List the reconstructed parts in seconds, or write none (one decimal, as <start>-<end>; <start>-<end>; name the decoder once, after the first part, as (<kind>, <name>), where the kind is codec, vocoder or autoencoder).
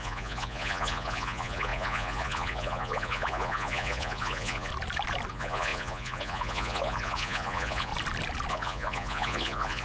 0.0-4.7 (vocoder, Vocos); 5.3-7.9; 8.5-9.8